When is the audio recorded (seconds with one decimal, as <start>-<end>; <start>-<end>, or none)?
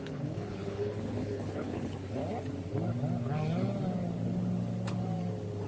2.2-5.7